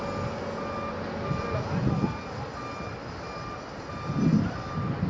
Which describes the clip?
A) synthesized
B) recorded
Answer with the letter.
B